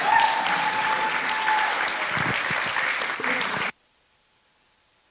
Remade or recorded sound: recorded